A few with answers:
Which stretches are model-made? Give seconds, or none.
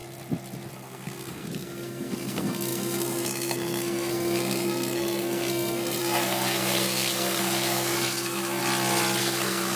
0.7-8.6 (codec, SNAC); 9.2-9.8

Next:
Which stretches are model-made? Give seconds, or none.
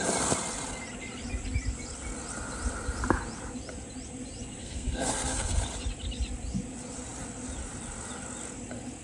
4.6-5.6 (codec, SNAC)